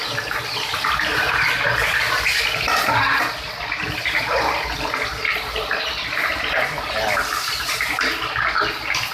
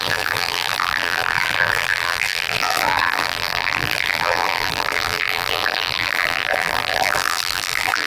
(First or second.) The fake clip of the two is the second